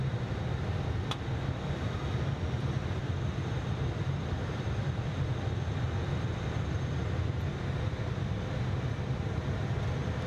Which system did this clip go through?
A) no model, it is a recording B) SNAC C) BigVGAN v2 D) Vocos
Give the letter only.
C